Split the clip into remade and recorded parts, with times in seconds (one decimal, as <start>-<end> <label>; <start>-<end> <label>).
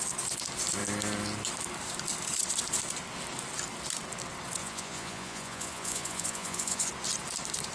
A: 0.0-4.6 recorded; 4.6-6.9 remade; 6.9-7.7 recorded